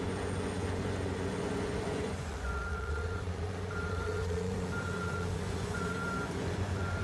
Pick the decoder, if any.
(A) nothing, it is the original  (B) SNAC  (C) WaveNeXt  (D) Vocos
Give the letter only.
D